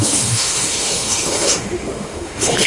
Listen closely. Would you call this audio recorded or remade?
remade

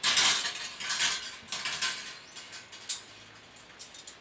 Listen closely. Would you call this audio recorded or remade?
recorded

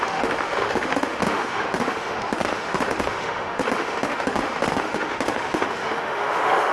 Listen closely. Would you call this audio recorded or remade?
remade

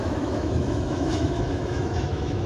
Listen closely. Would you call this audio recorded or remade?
remade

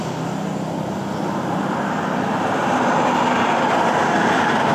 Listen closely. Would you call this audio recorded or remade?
recorded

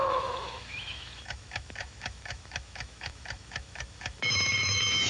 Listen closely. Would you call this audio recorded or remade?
remade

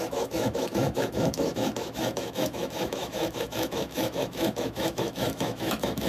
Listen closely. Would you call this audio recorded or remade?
remade